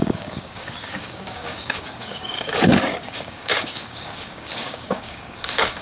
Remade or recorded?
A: remade